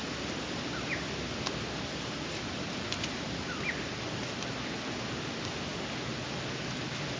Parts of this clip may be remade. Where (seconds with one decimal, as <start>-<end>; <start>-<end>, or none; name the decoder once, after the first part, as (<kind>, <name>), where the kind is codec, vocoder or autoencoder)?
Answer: none